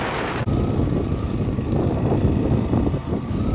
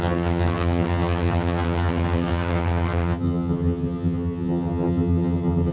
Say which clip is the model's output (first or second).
second